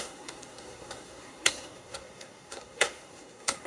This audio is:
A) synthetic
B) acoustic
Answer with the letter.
A